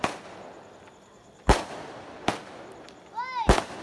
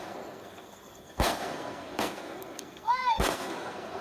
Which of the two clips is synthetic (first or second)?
second